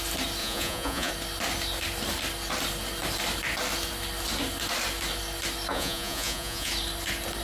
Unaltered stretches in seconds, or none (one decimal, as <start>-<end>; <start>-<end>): 0.0-0.4; 1.1-5.7; 6.7-7.4